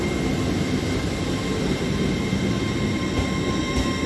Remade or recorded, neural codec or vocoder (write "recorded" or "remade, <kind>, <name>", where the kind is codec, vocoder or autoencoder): recorded